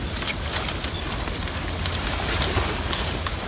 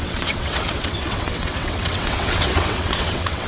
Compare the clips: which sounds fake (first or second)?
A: second